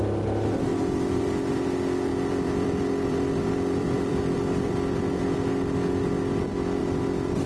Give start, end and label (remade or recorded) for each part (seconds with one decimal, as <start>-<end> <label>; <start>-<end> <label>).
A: 0.0-0.7 recorded; 0.7-1.5 remade; 1.5-2.1 recorded; 2.1-4.2 remade; 4.2-6.8 recorded; 6.8-7.5 remade